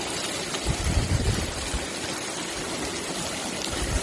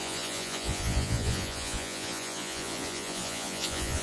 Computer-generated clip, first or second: second